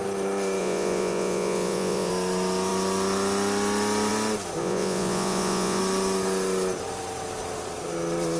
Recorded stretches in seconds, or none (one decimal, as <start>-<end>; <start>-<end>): 0.0-0.6; 2.1-4.6; 5.8-8.4